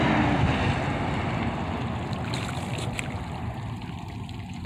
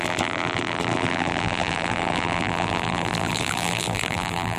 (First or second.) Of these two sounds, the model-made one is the second